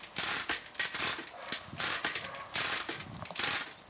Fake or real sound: real